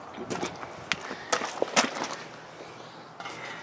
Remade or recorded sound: recorded